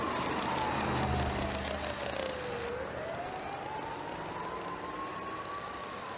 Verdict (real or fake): real